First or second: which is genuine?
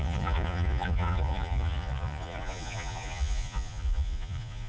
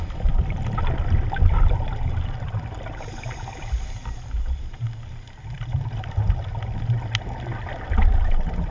second